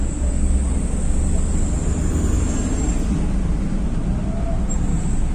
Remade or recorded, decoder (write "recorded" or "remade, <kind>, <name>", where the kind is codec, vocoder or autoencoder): recorded